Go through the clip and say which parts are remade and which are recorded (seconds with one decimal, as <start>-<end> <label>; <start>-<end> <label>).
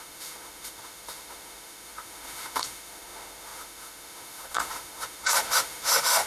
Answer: 0.0-6.3 remade